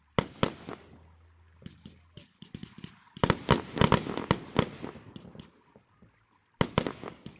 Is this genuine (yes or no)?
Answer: yes